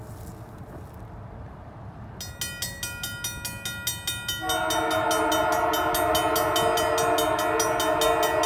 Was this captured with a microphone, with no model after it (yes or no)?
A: yes